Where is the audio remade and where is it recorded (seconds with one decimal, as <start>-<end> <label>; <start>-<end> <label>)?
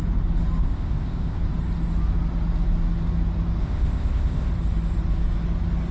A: 0.0-0.6 recorded; 0.6-1.4 remade; 1.4-3.6 recorded; 3.6-4.5 remade; 4.5-5.9 recorded